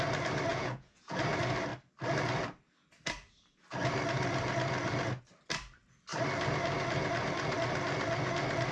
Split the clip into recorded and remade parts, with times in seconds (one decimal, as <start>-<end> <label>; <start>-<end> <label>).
0.0-0.5 recorded; 0.5-1.2 remade; 1.2-8.7 recorded